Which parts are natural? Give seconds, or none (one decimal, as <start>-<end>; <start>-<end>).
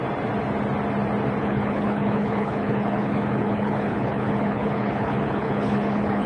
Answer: 0.0-1.4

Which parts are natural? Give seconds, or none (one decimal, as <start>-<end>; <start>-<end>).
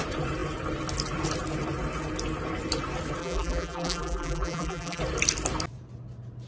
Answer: 0.0-3.2; 5.0-6.5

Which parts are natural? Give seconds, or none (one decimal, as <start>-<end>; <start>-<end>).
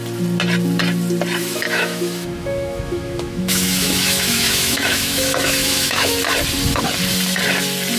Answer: 0.0-1.4; 6.2-8.0